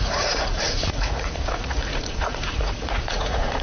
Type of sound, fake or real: fake